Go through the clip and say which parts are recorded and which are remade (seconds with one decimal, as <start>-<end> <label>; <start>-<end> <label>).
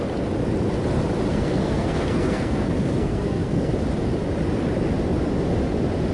0.0-1.3 recorded; 1.3-3.7 remade; 3.7-6.1 recorded